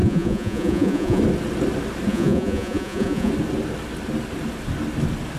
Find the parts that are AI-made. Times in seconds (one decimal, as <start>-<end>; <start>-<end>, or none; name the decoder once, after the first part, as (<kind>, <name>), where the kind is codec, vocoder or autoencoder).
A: 0.0-1.2 (vocoder, Vocos); 2.1-3.3

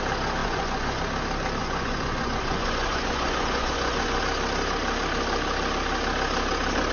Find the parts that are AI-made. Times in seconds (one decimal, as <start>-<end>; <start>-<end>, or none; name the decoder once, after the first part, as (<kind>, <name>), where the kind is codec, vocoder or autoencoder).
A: 0.4-1.0 (vocoder, Vocos); 1.6-4.2

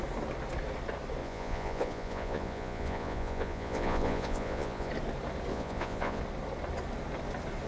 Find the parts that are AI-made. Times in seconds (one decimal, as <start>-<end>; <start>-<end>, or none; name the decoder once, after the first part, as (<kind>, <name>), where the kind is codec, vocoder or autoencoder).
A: 1.2-4.9 (vocoder, Vocos); 5.5-6.2

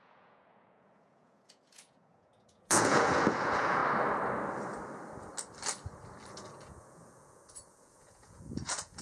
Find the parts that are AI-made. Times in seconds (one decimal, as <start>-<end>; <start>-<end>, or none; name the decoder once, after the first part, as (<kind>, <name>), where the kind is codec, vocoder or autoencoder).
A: 0.0-3.8 (vocoder, Vocos); 6.3-9.0